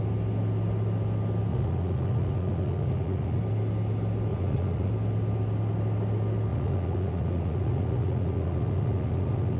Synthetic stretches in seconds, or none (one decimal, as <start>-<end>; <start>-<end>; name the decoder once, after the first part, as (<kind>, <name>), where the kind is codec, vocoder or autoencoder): 1.5-3.4 (vocoder, Vocos); 4.3-4.9; 6.5-9.6